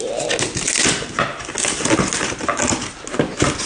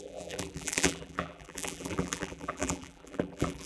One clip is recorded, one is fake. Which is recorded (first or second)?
first